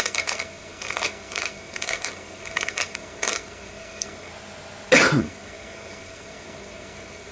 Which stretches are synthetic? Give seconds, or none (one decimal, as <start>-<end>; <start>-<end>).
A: 0.0-4.3; 5.2-7.3